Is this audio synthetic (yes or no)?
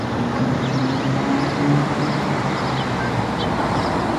no